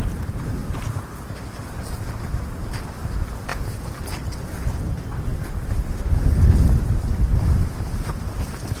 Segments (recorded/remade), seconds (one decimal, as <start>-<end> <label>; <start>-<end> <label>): 0.0-0.6 recorded; 0.6-1.8 remade; 1.8-5.3 recorded; 5.3-8.4 remade; 8.4-8.8 recorded